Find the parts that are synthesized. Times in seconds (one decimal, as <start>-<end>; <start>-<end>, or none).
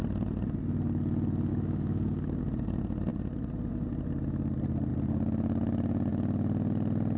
1.5-2.4